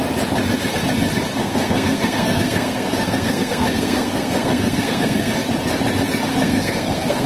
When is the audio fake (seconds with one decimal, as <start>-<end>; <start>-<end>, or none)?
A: 1.4-5.3; 6.3-7.3